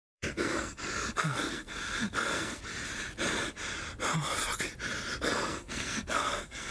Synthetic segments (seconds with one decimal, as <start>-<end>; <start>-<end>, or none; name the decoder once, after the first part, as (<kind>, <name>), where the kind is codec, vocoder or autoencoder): 0.0-2.7 (codec, SNAC); 5.2-6.7